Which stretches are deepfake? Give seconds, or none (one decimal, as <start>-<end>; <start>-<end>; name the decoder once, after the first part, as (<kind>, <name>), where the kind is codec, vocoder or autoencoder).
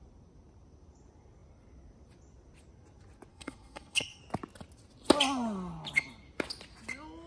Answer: 3.3-4.2 (codec, SNAC)